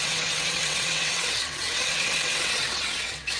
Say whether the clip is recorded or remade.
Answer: remade